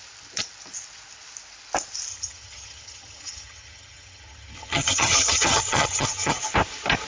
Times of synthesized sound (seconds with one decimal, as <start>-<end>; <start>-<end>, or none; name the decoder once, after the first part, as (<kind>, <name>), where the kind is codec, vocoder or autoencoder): 2.1-6.4 (vocoder, HiFi-GAN)